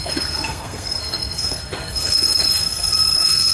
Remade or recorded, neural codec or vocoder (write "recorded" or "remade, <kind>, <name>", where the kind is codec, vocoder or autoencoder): remade, codec, SNAC